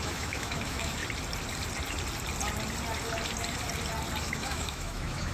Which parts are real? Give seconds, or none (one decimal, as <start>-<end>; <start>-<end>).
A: 1.0-4.2